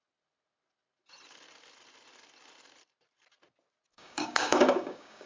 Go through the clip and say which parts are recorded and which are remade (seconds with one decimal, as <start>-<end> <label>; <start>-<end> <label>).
0.0-3.9 recorded; 3.9-5.3 remade